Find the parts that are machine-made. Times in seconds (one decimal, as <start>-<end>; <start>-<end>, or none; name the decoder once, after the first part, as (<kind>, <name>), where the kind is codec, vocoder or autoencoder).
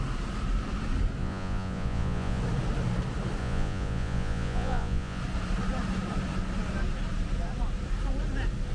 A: 1.2-2.4 (vocoder, Vocos); 3.4-5.2